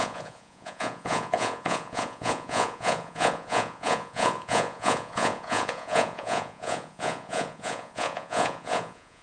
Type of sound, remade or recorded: remade